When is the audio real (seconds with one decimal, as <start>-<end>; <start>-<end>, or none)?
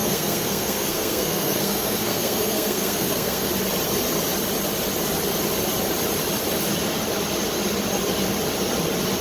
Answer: 3.5-9.2